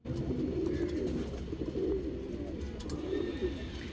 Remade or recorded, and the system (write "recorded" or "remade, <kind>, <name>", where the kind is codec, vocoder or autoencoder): recorded